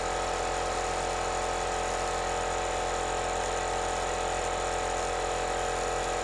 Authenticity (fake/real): real